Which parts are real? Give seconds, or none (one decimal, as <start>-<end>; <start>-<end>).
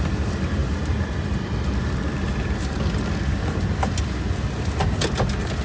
0.0-5.6